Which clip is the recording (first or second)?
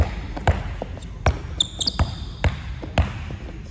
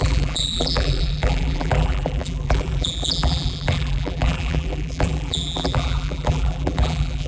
first